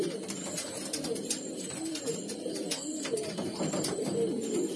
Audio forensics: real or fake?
real